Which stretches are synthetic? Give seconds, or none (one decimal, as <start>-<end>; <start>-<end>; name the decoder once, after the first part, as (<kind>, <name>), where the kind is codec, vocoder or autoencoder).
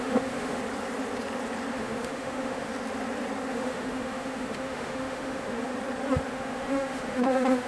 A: 0.0-0.6 (autoencoder, DAC-VAE); 1.7-2.7; 3.5-5.7; 6.3-7.7